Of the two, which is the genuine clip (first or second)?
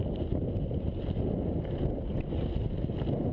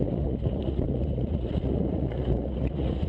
first